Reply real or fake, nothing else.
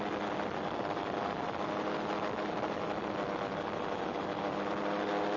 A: real